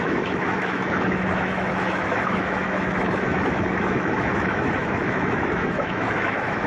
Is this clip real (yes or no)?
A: no